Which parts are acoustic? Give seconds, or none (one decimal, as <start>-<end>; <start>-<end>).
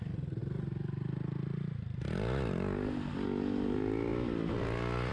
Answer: 0.0-5.1